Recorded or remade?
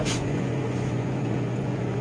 remade